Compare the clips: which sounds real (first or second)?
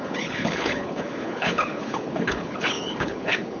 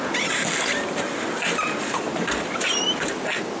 second